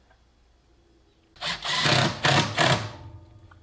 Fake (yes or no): no